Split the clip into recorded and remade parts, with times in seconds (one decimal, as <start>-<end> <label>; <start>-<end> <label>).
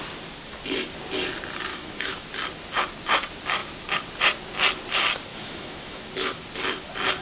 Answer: 0.0-1.7 recorded; 1.7-2.3 remade; 2.3-5.3 recorded; 5.3-6.1 remade; 6.1-7.2 recorded